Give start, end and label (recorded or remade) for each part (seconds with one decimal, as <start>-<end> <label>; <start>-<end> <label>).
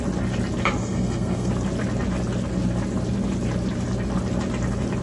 0.0-0.8 recorded; 0.8-1.5 remade; 1.5-5.0 recorded